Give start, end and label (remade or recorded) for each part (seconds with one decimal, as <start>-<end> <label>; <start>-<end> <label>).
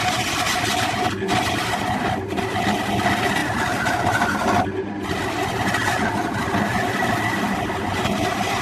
0.0-8.6 recorded